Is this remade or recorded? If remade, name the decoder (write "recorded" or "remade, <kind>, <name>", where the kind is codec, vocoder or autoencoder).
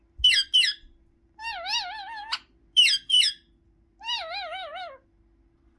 recorded